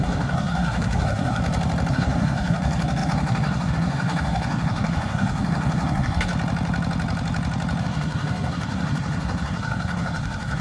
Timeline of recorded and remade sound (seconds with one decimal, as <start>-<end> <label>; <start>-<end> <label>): 0.0-1.4 remade; 1.4-1.9 recorded; 1.9-6.3 remade; 6.3-7.8 recorded; 7.8-10.6 remade